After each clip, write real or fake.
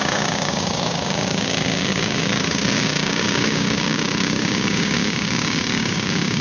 fake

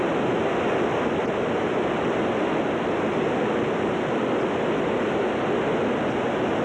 real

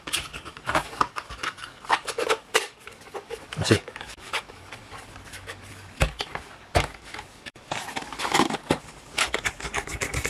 fake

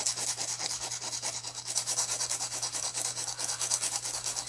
fake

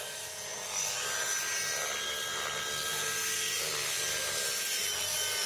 real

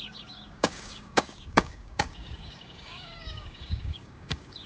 fake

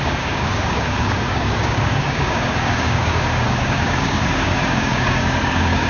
fake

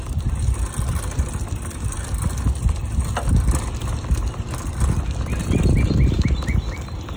real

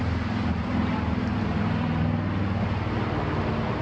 real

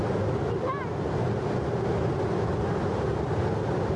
real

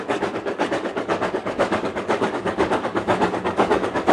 fake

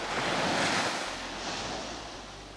real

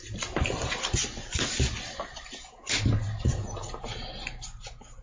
real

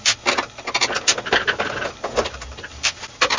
real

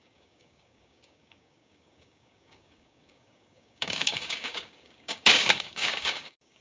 fake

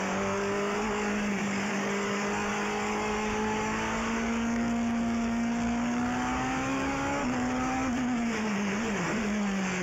fake